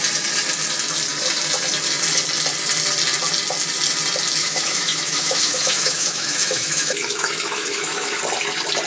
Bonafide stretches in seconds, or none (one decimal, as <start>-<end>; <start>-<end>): 0.0-4.4; 8.2-8.9